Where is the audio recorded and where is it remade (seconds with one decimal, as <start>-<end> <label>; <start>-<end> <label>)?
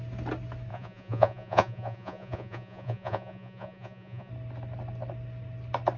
0.0-0.7 recorded; 0.7-4.3 remade; 4.3-6.0 recorded